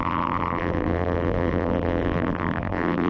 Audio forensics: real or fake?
fake